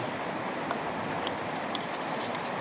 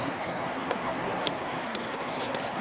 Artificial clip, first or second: second